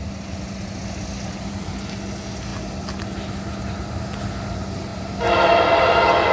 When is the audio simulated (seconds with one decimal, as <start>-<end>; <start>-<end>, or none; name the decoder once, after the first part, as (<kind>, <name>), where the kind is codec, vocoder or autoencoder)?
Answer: none